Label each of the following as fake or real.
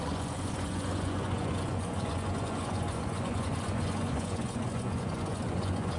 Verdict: fake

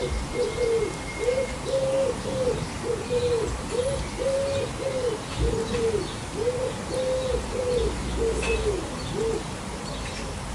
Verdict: real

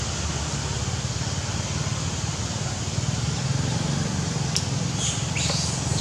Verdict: real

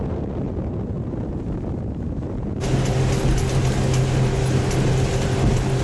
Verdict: real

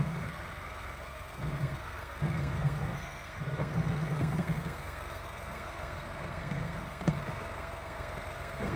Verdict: fake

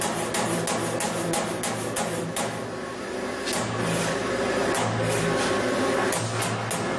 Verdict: real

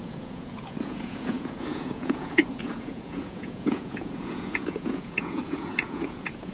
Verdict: fake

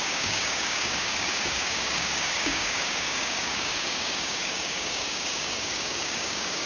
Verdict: fake